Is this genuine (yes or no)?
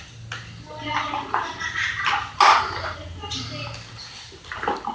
yes